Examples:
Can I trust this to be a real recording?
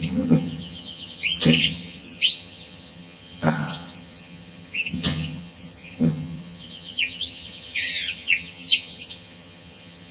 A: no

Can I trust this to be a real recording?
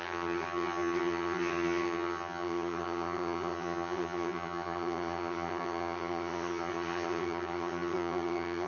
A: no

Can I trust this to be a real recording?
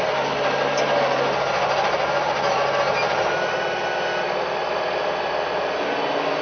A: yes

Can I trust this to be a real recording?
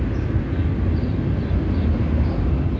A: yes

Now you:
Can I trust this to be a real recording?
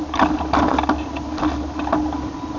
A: yes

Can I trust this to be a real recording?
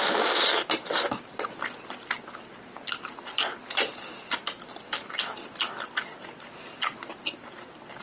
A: yes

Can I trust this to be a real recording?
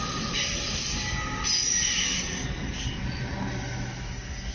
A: yes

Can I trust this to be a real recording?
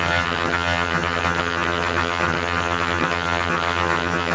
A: no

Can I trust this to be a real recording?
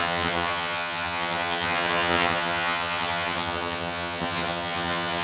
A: no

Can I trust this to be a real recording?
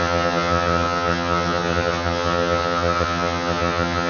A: no